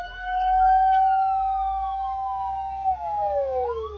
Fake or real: fake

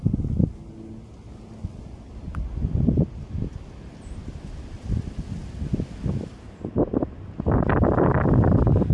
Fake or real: real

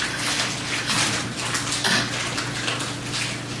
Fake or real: real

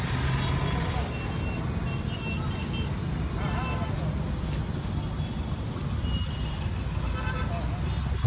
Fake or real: real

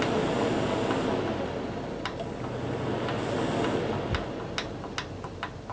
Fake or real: real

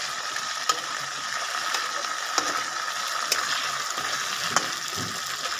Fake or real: real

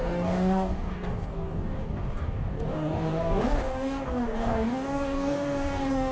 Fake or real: fake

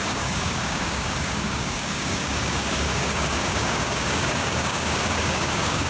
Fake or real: fake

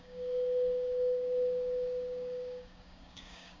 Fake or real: fake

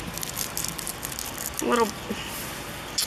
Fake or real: real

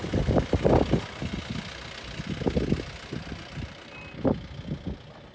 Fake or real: real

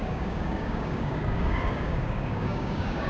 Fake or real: fake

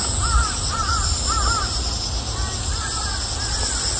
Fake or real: real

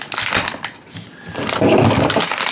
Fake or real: real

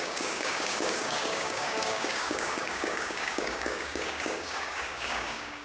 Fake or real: fake